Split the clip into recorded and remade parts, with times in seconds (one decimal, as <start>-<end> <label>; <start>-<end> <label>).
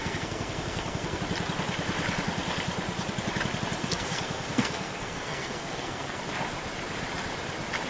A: 0.0-1.2 remade; 1.2-3.8 recorded; 3.8-6.2 remade; 6.2-7.9 recorded